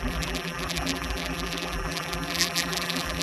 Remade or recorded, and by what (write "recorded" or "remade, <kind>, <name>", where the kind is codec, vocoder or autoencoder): remade, vocoder, BigVGAN v2